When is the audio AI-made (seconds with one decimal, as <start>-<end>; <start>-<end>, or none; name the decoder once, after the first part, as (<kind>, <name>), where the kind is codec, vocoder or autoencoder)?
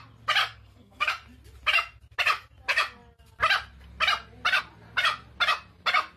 0.4-1.1 (codec, SNAC)